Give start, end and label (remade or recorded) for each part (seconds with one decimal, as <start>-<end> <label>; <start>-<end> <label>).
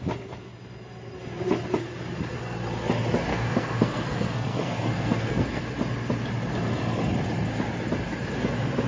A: 0.0-3.3 recorded; 3.3-5.6 remade; 5.6-8.9 recorded